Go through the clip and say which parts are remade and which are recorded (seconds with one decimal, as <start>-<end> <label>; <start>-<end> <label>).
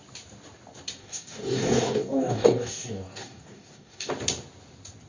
0.0-1.0 recorded; 1.0-4.1 remade; 4.1-5.1 recorded